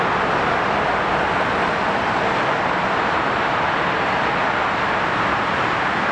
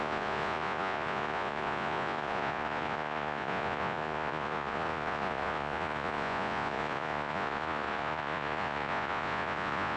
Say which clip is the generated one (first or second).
second